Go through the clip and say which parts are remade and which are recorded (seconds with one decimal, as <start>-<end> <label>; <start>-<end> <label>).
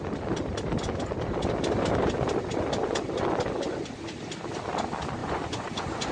0.0-5.2 recorded; 5.2-6.1 remade